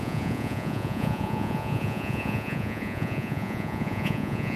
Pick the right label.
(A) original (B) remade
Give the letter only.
B